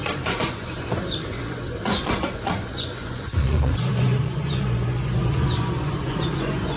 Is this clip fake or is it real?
fake